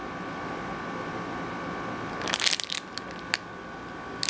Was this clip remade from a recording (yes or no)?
no